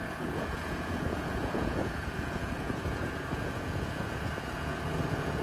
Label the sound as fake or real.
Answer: fake